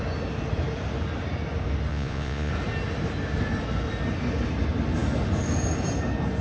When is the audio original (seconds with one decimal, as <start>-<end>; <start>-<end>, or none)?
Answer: 0.0-1.9; 2.5-6.4